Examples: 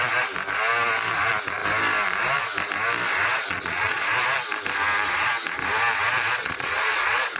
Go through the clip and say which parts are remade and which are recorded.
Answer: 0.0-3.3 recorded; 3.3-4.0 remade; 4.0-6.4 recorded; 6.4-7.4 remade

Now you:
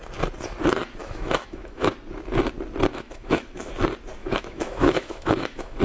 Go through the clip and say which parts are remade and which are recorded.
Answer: 0.0-1.0 recorded; 1.0-1.9 remade; 1.9-2.9 recorded; 2.9-3.7 remade; 3.7-4.2 recorded; 4.2-5.8 remade

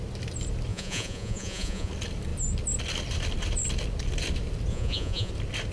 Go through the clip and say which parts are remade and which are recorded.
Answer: 0.0-0.7 recorded; 0.7-1.9 remade; 1.9-4.7 recorded; 4.7-5.3 remade; 5.3-5.7 recorded

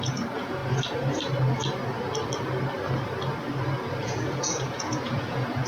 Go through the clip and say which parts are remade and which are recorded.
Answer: 0.0-0.6 remade; 0.6-4.0 recorded; 4.0-5.7 remade

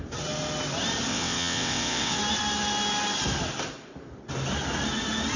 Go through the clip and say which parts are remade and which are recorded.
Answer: 0.0-1.1 recorded; 1.1-2.2 remade; 2.2-5.4 recorded